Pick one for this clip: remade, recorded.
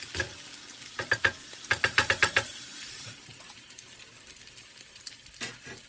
recorded